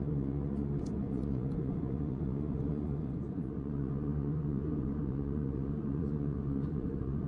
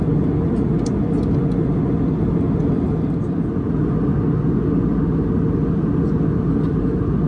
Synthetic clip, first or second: first